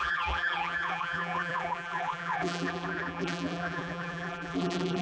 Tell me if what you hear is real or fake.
fake